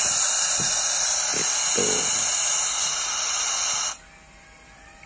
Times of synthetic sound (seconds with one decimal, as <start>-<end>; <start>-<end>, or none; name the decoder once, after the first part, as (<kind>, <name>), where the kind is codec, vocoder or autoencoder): none

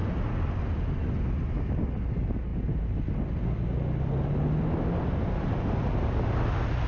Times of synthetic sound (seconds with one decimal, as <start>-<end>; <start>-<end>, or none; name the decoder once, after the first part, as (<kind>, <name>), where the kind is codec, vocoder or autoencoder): none